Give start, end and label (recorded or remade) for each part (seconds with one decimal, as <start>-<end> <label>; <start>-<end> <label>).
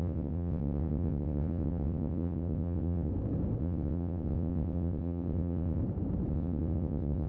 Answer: 0.0-3.1 remade; 3.1-3.6 recorded; 3.6-5.8 remade; 5.8-6.3 recorded; 6.3-7.3 remade